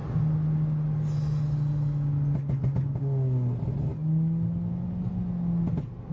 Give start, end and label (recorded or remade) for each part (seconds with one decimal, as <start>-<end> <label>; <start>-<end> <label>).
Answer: 0.0-6.1 recorded